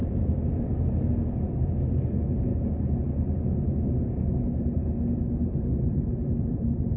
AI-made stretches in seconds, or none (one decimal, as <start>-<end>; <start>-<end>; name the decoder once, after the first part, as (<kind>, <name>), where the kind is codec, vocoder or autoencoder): 0.0-2.5 (vocoder, BigVGAN v2); 4.3-4.8; 5.4-7.0